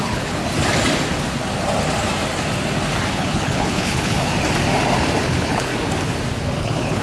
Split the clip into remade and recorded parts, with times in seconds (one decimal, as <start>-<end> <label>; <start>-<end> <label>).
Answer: 0.0-0.4 remade; 0.4-3.1 recorded; 3.1-4.3 remade; 4.3-5.2 recorded; 5.2-5.7 remade; 5.7-6.6 recorded; 6.6-7.0 remade